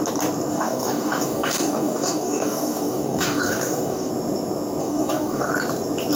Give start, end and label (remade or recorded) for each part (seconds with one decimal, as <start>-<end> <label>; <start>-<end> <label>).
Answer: 0.0-0.5 recorded; 0.5-4.1 remade; 4.1-4.8 recorded; 4.8-5.5 remade; 5.5-6.2 recorded